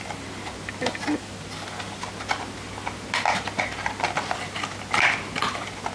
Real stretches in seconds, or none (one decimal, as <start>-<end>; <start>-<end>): 0.0-5.9